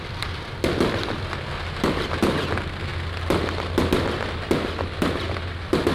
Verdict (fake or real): real